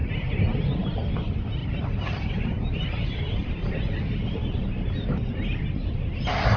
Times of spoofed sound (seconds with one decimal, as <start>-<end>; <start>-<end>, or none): 0.0-0.7; 1.6-5.6